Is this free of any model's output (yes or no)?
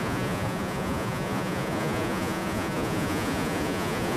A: no